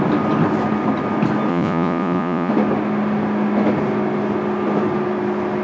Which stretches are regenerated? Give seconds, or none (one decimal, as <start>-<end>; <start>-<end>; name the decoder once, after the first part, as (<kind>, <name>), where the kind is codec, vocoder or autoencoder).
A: 1.5-2.5 (vocoder, Vocos)